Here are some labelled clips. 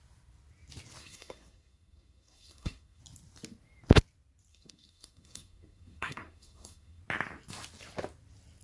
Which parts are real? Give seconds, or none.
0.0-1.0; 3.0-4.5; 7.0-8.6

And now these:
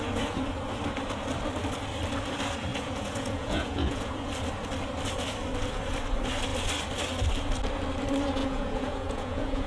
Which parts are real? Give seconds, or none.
0.0-2.7; 4.3-8.4

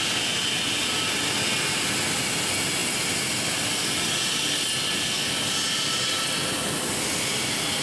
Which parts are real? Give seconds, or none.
0.0-7.8

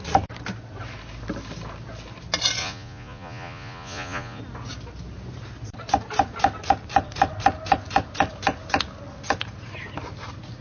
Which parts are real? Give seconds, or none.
0.0-2.6; 4.4-10.6

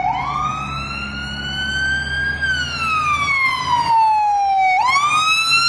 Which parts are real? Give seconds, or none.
0.0-5.7

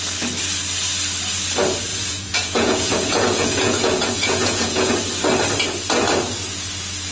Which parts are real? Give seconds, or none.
0.0-1.9; 4.9-7.1

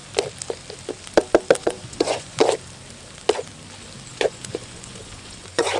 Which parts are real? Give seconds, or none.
0.0-1.6; 2.4-4.1